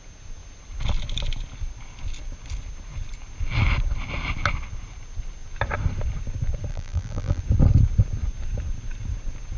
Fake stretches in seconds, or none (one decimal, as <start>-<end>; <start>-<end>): 6.7-7.4